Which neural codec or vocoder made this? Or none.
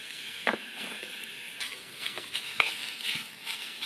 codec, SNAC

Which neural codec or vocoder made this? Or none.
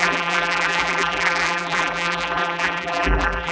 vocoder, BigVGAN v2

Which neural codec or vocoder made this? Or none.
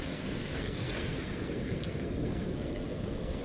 codec, SNAC